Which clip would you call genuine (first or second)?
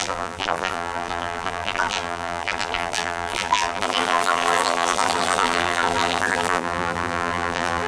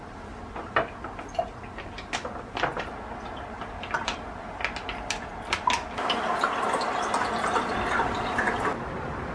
second